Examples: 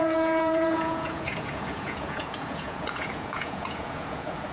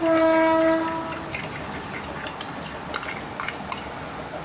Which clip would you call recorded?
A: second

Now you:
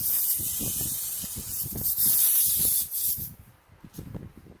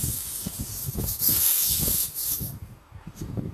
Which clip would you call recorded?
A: first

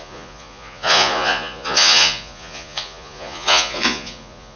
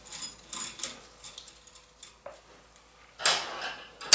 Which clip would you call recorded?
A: second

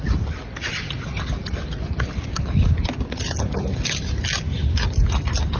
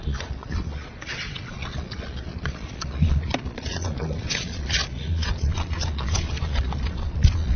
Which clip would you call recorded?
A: first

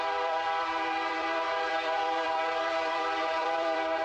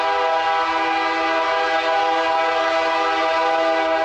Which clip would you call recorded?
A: second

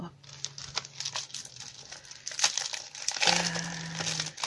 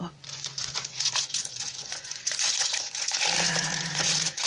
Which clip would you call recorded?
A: first